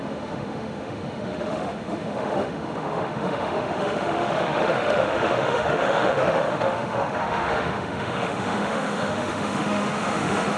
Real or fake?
fake